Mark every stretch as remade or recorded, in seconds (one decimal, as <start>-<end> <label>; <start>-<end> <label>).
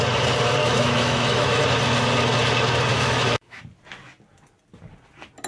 0.0-0.6 recorded; 0.6-1.6 remade; 1.6-2.9 recorded; 2.9-3.6 remade; 3.6-5.5 recorded